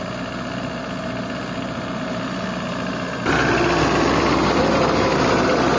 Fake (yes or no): no